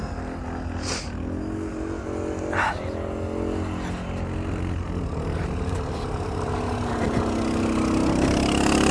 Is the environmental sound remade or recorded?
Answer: recorded